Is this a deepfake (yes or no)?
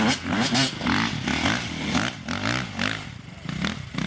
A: no